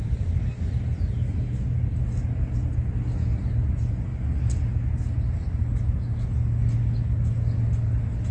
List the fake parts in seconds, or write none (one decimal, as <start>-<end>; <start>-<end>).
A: 0.0-0.4; 3.3-4.1